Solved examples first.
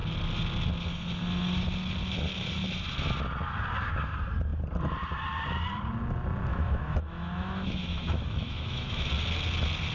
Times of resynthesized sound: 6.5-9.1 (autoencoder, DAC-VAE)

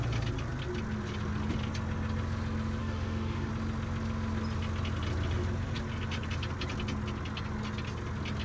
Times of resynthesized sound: 2.8-3.5 (autoencoder, DAC-VAE)

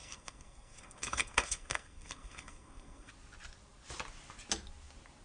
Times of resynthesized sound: 0.0-3.1 (codec, SNAC)

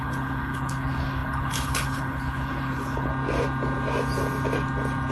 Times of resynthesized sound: 0.0-3.1 (codec, HILCodec)

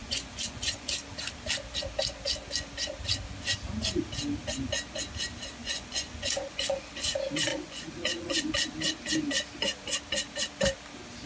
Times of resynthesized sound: 0.0-0.9 (vocoder, Vocos); 5.6-6.9; 7.5-8.5

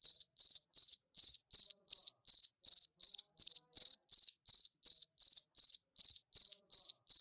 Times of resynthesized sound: 0.0-1.4 (vocoder, Vocos)

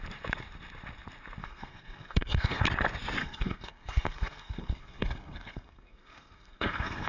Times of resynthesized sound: 1.4-2.6 (codec, SNAC); 3.2-7.1